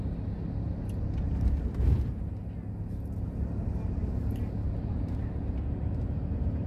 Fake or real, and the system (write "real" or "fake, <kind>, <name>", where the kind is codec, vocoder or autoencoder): real